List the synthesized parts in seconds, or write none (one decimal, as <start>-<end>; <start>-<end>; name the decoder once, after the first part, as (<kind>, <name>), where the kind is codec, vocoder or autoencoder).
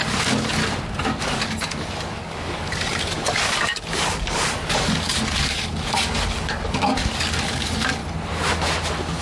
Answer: 0.0-0.6 (codec, DAC); 1.2-8.0